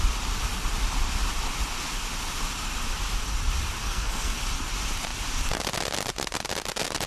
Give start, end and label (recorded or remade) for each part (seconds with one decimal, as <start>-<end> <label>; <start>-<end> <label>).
0.0-3.8 recorded; 3.8-4.4 remade; 4.4-7.1 recorded